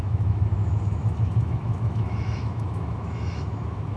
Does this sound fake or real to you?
fake